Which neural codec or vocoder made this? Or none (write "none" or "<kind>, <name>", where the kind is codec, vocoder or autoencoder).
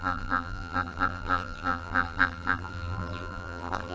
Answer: vocoder, BigVGAN v2